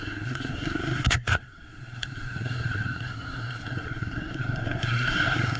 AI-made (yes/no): yes